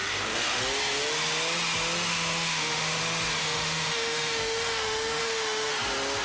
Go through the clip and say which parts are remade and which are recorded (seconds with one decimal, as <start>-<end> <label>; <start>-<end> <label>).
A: 0.0-0.6 remade; 0.6-2.1 recorded; 2.1-3.0 remade; 3.0-3.4 recorded; 3.4-5.7 remade; 5.7-6.2 recorded